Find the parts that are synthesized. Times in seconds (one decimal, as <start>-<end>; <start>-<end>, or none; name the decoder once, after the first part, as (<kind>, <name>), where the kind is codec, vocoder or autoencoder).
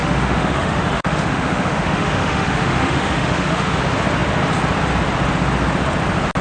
0.0-3.8 (autoencoder, DAC-VAE)